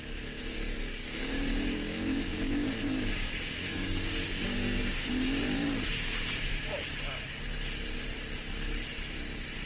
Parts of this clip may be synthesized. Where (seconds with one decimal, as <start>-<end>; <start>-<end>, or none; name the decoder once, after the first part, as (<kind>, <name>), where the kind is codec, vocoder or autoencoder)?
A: 1.0-5.1 (codec, DAC)